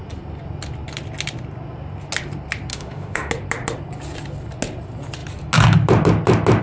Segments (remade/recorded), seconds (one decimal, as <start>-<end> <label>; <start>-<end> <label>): 0.0-2.7 recorded; 2.7-3.3 remade; 3.3-6.6 recorded